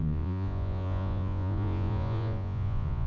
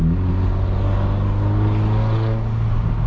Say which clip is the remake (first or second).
first